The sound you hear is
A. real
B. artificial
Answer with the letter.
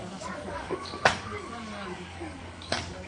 B